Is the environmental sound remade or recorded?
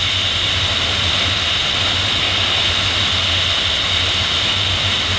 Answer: recorded